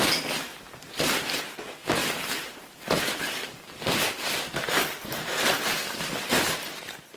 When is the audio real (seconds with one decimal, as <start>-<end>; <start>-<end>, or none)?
0.0-0.5; 1.4-2.0; 6.3-7.2